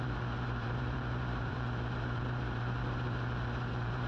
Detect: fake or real fake